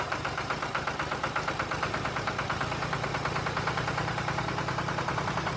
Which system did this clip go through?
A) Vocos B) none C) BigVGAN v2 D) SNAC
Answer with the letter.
C